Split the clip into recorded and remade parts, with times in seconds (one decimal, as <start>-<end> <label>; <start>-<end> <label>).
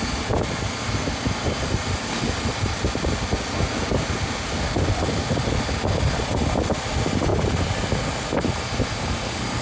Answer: 0.0-9.6 recorded